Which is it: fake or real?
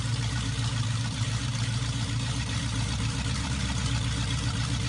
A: fake